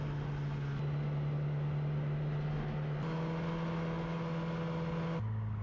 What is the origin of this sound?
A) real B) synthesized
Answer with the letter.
A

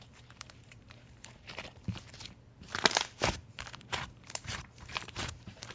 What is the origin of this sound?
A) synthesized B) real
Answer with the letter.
A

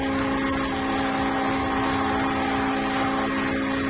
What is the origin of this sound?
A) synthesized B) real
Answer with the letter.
B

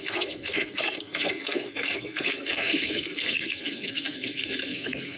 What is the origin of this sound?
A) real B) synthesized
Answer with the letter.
B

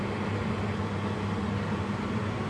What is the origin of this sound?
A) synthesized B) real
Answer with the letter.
B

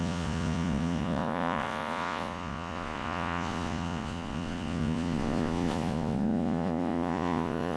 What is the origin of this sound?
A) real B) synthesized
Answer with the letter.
B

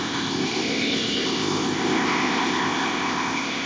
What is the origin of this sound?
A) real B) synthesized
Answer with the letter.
B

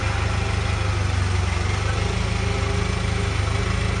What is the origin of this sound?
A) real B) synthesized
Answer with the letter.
A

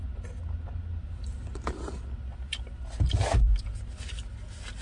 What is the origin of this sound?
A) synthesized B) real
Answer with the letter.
B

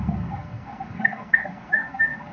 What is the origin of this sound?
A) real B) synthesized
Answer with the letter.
B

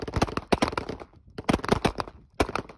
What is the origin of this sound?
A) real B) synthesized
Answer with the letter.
A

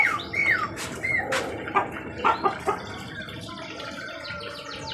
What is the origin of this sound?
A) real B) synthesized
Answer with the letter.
A